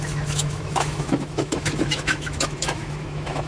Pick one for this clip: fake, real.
fake